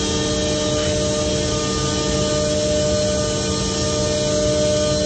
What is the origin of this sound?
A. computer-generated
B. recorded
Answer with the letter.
B